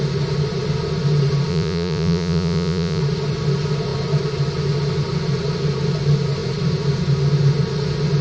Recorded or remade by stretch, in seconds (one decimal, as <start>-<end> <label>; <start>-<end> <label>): 0.0-1.5 recorded; 1.5-3.0 remade; 3.0-8.2 recorded